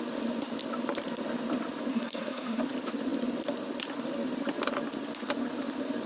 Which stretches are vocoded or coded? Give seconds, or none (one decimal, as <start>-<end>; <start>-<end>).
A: 1.9-2.6